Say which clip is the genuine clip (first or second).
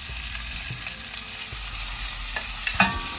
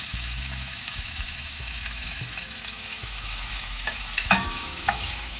first